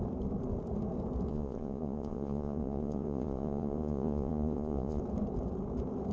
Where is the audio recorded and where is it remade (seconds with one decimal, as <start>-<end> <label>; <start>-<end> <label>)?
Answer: 0.0-1.3 recorded; 1.3-5.0 remade; 5.0-6.1 recorded